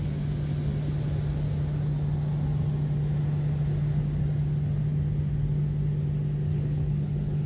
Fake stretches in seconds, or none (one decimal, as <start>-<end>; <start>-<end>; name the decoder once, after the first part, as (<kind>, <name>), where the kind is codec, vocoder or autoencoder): 6.5-7.5 (codec, HILCodec)